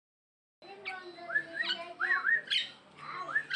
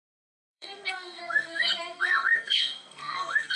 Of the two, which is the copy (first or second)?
second